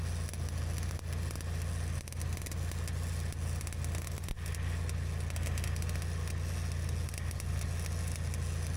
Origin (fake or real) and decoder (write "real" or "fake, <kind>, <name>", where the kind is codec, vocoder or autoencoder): real